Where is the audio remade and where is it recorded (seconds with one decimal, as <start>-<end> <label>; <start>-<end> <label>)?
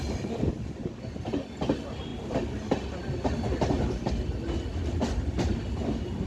0.0-6.3 recorded